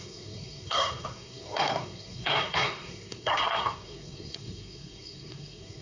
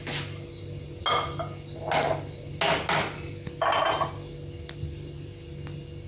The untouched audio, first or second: second